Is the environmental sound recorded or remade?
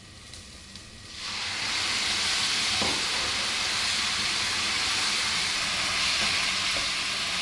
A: recorded